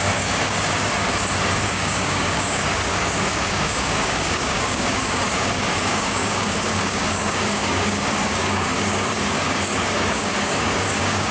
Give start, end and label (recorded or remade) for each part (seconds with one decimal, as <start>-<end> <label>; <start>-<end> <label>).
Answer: 0.0-1.0 remade; 1.0-1.5 recorded; 1.5-11.3 remade